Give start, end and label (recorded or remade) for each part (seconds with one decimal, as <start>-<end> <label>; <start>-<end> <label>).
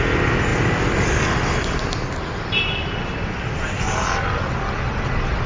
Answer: 0.0-5.5 recorded